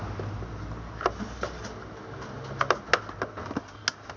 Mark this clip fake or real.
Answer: real